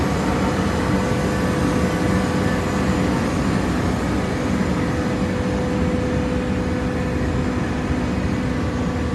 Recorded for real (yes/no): yes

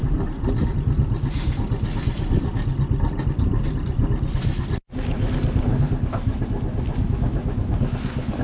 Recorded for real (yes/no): yes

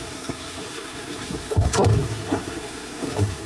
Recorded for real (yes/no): no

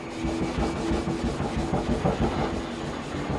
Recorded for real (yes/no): yes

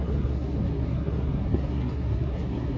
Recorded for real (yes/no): no